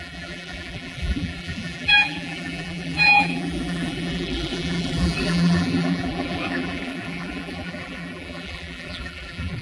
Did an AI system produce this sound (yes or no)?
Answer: yes